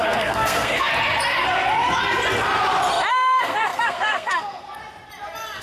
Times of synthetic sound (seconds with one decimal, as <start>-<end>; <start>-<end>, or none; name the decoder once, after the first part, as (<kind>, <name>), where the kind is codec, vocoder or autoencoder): 0.0-0.9 (codec, SNAC); 3.1-4.8